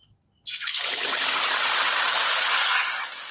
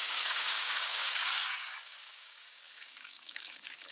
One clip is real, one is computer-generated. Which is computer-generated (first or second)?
second